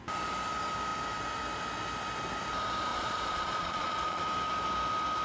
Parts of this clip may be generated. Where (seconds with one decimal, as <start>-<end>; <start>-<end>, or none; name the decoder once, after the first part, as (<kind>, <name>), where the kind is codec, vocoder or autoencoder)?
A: 2.9-4.2 (vocoder, Vocos)